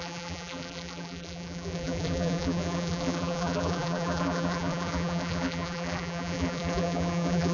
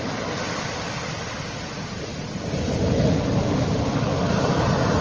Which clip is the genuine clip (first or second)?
second